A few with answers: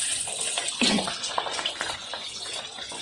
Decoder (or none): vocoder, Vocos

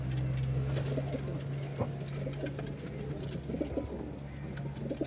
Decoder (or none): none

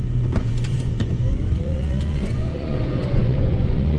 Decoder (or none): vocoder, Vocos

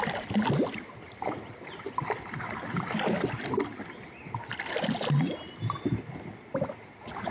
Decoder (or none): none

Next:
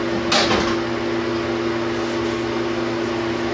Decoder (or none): none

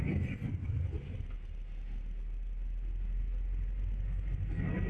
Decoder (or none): none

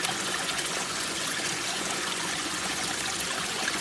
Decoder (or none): vocoder, Vocos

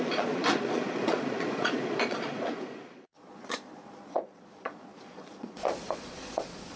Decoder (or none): vocoder, Vocos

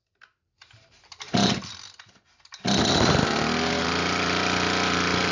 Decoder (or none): none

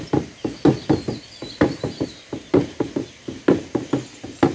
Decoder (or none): none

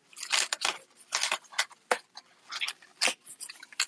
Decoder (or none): none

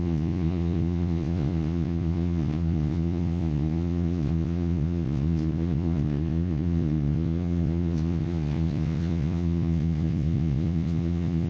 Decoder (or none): vocoder, Vocos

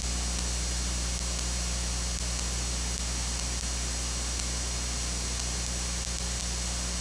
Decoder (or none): none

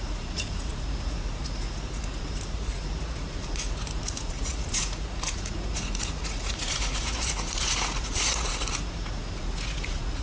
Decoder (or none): vocoder, Vocos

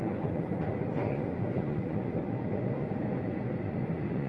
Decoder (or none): vocoder, Vocos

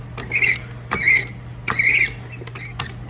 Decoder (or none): none